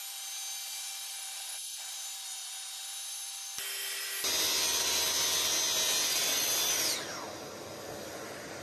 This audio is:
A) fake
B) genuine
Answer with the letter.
B